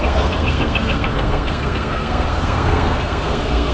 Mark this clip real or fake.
fake